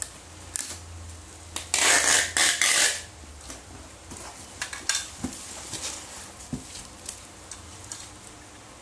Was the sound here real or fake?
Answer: real